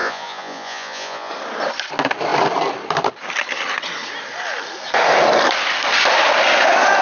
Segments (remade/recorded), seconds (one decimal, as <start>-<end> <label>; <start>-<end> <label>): 0.0-1.3 remade; 1.3-7.0 recorded